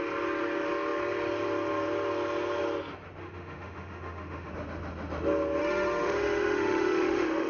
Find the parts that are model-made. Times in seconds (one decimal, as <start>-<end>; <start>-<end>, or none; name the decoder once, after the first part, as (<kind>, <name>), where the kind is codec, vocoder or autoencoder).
3.2-4.5 (autoencoder, DAC-VAE); 5.6-7.5